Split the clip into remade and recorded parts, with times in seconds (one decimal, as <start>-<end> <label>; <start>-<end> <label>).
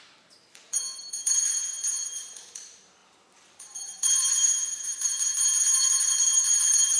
0.0-7.0 remade